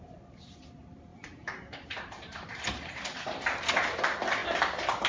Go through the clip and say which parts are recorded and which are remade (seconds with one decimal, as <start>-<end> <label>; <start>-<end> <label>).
0.0-1.1 recorded; 1.1-4.0 remade; 4.0-5.1 recorded